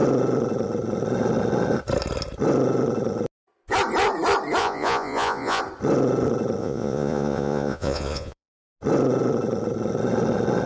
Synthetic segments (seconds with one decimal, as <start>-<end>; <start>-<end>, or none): 4.6-5.6; 6.6-8.5